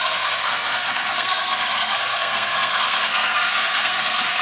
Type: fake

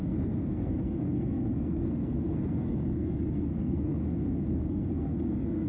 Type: fake